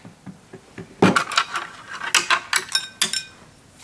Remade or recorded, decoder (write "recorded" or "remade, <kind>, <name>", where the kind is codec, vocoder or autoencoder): recorded